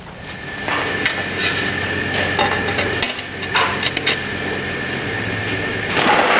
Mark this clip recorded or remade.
recorded